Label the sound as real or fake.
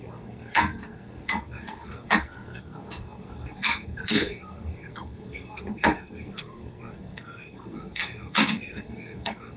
fake